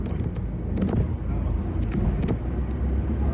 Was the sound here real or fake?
real